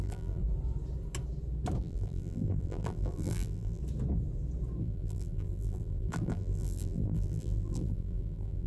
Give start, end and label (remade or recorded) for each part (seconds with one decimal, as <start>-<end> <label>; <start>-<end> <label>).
0.0-0.4 remade; 0.4-1.8 recorded; 1.8-3.8 remade; 3.8-4.8 recorded; 4.8-8.7 remade